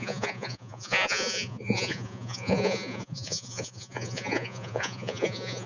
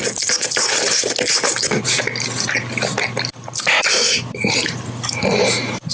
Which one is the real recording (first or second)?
second